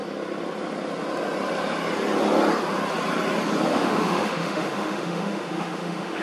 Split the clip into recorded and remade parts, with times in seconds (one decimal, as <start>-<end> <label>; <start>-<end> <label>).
0.0-3.7 recorded; 3.7-6.2 remade